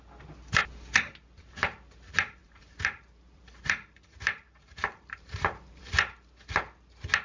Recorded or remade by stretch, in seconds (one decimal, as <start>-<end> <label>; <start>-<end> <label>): 0.0-2.4 recorded; 2.4-5.8 remade; 5.8-7.2 recorded